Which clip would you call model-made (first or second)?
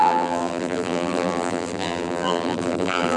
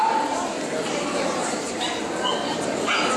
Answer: first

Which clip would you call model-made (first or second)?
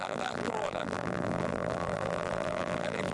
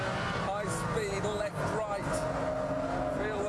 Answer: first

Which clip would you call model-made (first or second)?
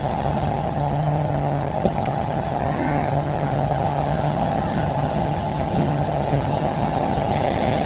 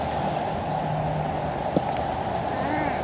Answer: first